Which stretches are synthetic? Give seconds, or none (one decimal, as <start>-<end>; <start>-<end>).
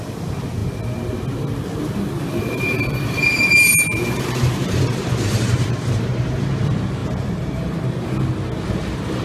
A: 2.4-6.5; 7.0-7.8